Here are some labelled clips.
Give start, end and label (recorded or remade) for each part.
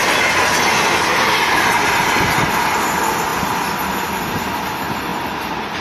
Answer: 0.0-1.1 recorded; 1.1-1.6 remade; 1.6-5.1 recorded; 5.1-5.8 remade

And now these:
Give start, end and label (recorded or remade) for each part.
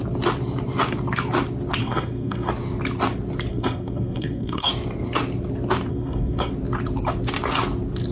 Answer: 0.0-1.8 recorded; 1.8-2.5 remade; 2.5-3.5 recorded; 3.5-4.7 remade; 4.7-5.9 recorded; 5.9-6.5 remade; 6.5-8.1 recorded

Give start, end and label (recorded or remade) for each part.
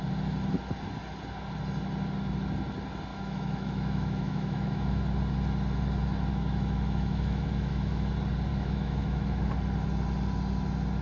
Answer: 0.0-3.1 recorded; 3.1-5.0 remade; 5.0-6.3 recorded; 6.3-8.1 remade; 8.1-8.5 recorded; 8.5-9.5 remade; 9.5-11.0 recorded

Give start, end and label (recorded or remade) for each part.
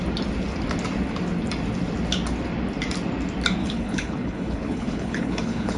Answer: 0.0-3.6 recorded; 3.6-5.8 remade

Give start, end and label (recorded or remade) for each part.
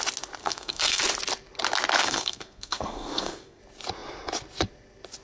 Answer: 0.0-0.4 recorded; 0.4-1.0 remade; 1.0-2.0 recorded; 2.0-3.6 remade; 3.6-5.2 recorded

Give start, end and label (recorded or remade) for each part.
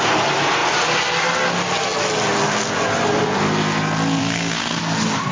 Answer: 0.0-4.2 recorded; 4.2-4.8 remade; 4.8-5.3 recorded